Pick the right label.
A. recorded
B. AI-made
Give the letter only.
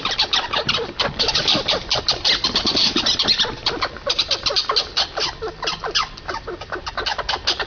A